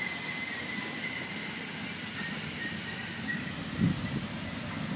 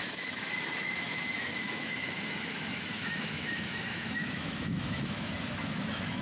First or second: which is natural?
first